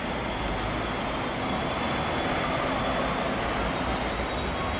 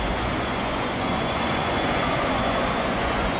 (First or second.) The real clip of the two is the first